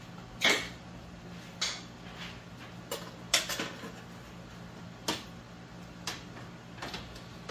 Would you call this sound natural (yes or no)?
yes